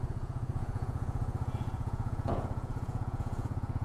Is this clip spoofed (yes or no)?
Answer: yes